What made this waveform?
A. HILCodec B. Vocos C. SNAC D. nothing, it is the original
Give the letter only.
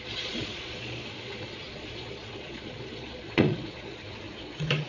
B